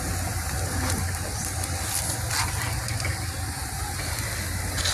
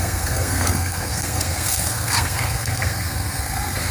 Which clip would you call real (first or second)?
first